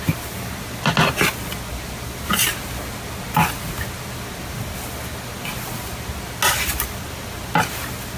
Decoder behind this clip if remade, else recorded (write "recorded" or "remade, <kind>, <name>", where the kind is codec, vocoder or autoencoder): recorded